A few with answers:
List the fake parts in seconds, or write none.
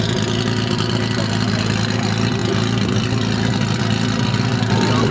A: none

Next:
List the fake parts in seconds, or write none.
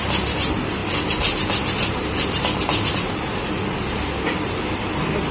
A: none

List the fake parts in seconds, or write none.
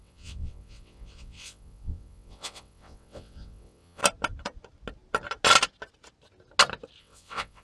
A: 0.0-4.0 (vocoder, WaveNeXt); 7.0-7.6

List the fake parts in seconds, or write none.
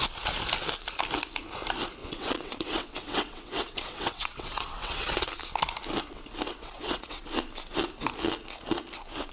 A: 2.0-5.3 (vocoder, WaveNeXt); 6.5-7.2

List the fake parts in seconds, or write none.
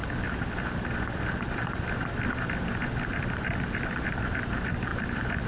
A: none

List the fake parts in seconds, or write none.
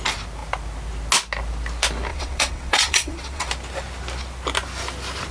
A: 2.1-3.5 (vocoder, WaveNeXt)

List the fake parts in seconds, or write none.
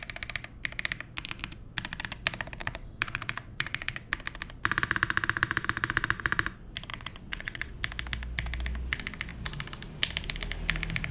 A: 2.6-4.1 (vocoder, WaveNeXt); 6.9-7.7